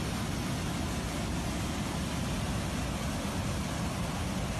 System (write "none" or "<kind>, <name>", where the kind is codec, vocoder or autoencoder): none